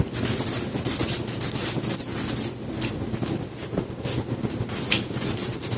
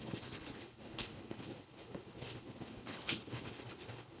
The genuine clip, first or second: first